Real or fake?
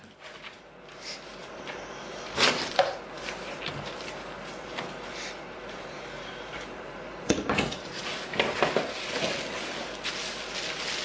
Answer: real